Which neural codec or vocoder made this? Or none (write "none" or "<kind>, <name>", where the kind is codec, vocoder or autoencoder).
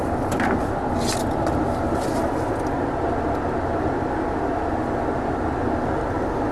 none